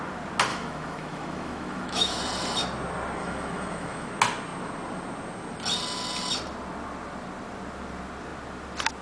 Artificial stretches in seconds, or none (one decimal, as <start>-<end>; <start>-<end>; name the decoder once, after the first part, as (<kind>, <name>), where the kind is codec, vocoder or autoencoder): 0.5-2.2 (autoencoder, DAC-VAE); 3.2-4.1